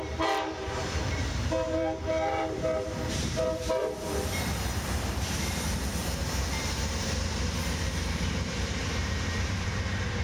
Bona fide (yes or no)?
no